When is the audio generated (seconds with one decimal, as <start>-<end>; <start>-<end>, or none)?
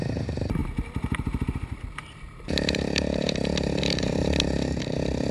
0.0-5.3